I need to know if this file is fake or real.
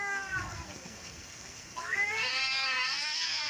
fake